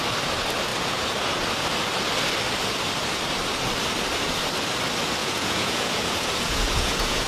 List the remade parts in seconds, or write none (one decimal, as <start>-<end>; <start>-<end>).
5.2-7.3